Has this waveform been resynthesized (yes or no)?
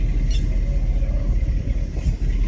no